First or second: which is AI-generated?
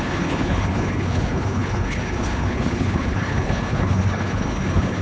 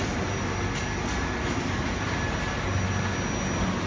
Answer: first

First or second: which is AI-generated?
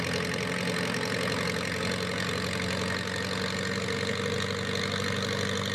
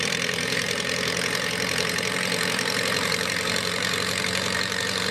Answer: second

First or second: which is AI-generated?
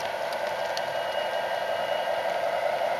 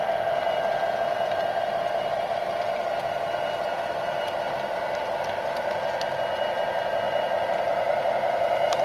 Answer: first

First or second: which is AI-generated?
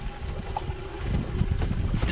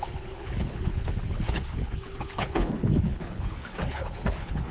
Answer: second